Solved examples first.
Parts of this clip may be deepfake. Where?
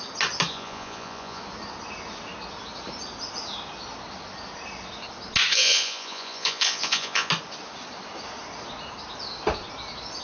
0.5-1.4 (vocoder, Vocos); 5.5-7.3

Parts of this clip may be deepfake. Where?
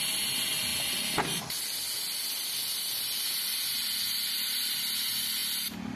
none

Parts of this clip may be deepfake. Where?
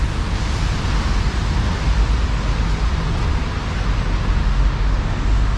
4.4-5.6 (autoencoder, DAC-VAE)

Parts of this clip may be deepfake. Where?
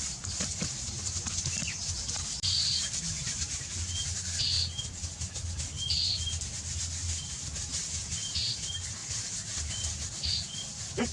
9.0-10.3 (vocoder, BigVGAN v2)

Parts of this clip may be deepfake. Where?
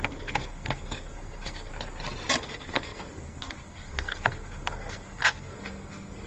0.0-1.7 (codec, SNAC); 2.4-6.3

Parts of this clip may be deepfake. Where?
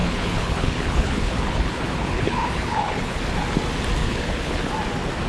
0.0-3.2 (codec, HILCodec); 4.0-4.7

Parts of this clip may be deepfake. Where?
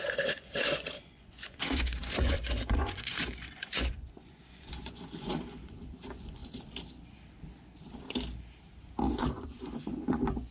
0.0-6.4 (vocoder, Vocos); 9.1-10.5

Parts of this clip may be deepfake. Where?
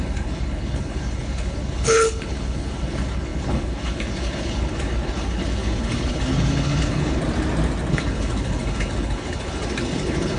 0.0-7.2 (codec, HILCodec); 7.9-10.4